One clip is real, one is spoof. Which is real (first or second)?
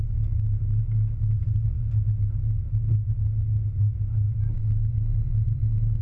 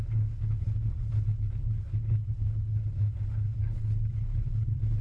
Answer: first